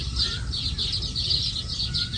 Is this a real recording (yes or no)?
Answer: yes